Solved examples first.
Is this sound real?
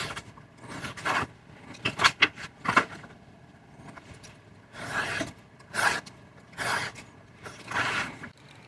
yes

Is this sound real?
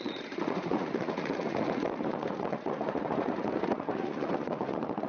no